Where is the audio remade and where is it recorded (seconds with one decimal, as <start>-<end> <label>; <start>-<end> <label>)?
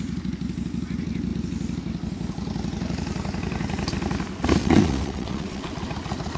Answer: 0.0-4.6 recorded; 4.6-5.7 remade; 5.7-6.4 recorded